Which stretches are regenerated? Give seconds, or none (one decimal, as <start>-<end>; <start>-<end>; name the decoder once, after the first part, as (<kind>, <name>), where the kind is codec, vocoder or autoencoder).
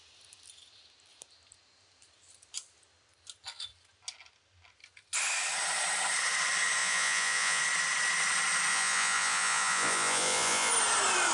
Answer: 6.8-7.6 (vocoder, Vocos); 8.7-10.7